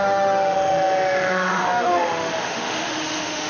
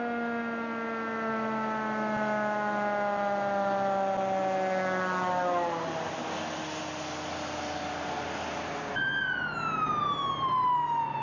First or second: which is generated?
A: first